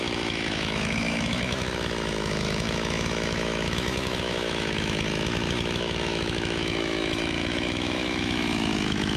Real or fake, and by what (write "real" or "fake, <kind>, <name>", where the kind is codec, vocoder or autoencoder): fake, autoencoder, DAC-VAE